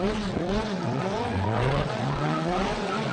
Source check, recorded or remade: remade